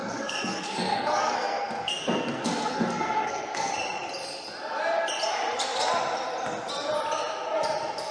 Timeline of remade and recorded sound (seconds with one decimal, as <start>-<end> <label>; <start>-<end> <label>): 0.0-3.7 remade; 3.7-8.1 recorded